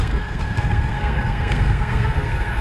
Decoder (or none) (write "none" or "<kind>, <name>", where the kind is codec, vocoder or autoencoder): codec, SNAC